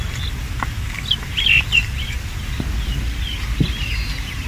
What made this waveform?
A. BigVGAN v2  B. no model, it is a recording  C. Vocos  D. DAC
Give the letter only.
B